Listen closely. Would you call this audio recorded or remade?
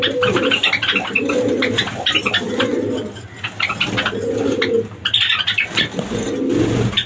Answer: recorded